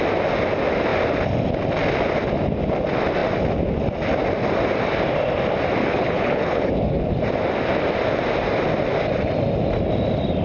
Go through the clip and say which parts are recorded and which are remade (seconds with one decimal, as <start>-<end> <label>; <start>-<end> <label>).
0.0-5.8 recorded; 5.8-6.7 remade; 6.7-10.4 recorded